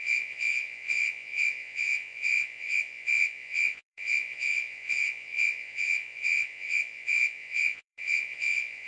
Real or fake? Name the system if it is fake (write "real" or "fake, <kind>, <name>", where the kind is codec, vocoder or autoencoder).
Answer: fake, vocoder, Vocos